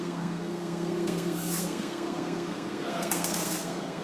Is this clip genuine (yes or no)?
no